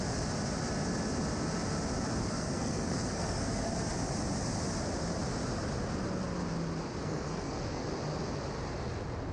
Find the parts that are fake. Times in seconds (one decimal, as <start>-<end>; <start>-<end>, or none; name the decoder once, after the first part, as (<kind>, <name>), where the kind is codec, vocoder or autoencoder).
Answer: 2.2-3.7 (codec, SNAC); 7.0-7.9